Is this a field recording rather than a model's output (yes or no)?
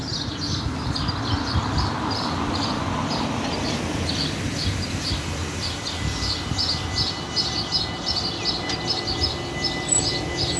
yes